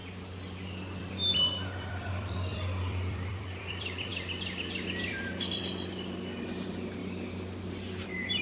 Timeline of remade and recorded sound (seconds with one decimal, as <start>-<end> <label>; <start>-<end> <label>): 0.0-4.1 remade; 4.1-5.0 recorded; 5.0-8.4 remade